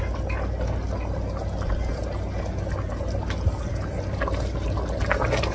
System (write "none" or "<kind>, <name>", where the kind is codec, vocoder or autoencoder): none